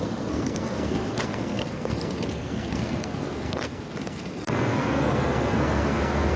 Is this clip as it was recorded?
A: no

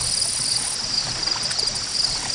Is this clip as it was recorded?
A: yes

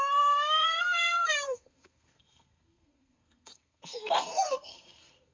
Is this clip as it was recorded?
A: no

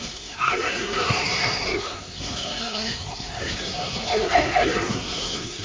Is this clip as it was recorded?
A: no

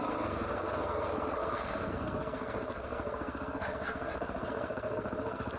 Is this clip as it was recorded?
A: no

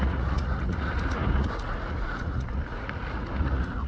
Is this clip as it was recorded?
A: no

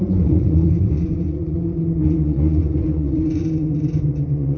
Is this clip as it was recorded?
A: no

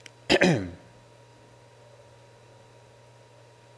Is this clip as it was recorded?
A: yes